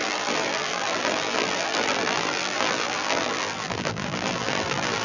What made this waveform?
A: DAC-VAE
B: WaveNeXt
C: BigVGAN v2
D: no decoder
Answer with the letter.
C